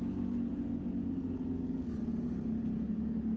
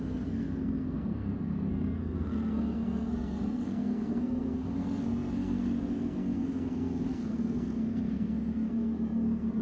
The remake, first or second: second